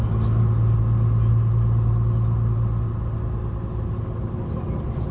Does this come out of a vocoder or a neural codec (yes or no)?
no